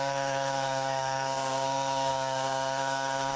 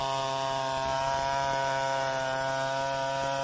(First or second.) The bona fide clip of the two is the second